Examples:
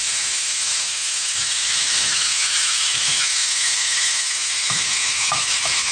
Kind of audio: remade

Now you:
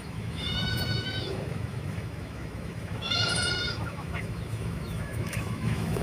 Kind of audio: remade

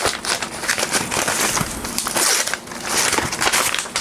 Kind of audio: recorded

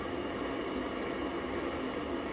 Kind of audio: recorded